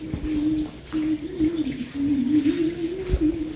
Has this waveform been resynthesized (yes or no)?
no